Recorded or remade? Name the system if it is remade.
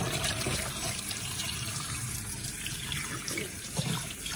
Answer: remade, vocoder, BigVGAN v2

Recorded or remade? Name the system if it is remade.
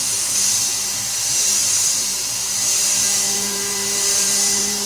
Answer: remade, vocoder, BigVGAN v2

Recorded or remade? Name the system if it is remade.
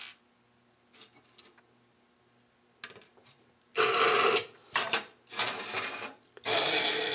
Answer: recorded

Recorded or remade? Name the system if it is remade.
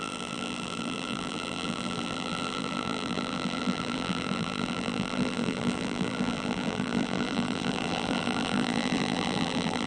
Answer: remade, vocoder, BigVGAN v2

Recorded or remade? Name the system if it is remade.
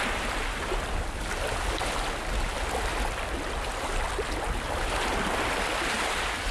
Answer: recorded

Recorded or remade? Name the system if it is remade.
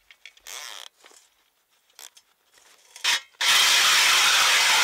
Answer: recorded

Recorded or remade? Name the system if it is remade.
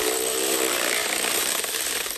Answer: remade, vocoder, BigVGAN v2